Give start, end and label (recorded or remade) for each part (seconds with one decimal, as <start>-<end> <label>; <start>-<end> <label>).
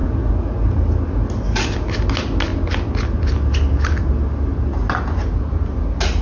0.0-6.2 recorded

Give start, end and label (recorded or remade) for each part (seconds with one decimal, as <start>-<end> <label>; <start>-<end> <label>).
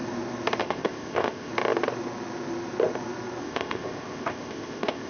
0.0-0.6 recorded; 0.6-1.5 remade; 1.5-3.4 recorded; 3.4-5.1 remade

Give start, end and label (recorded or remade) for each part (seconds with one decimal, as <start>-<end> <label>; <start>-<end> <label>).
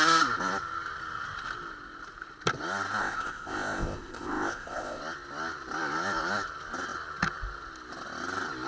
0.0-3.0 recorded; 3.0-5.0 remade; 5.0-8.7 recorded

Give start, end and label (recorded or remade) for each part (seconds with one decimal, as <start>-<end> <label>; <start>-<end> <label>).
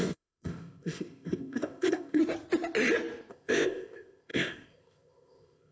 0.0-2.2 remade; 2.2-3.3 recorded; 3.3-5.7 remade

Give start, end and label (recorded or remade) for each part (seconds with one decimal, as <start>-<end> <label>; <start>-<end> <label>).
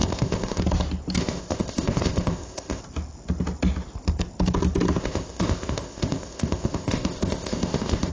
0.0-0.6 remade; 0.6-1.2 recorded; 1.2-2.8 remade; 2.8-5.0 recorded; 5.0-8.1 remade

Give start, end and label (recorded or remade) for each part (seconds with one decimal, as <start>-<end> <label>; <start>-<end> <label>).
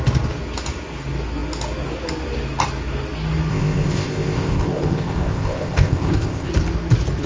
0.0-3.5 recorded; 3.5-6.5 remade; 6.5-7.3 recorded